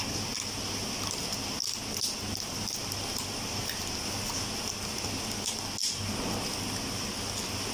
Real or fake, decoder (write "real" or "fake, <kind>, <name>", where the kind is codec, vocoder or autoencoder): real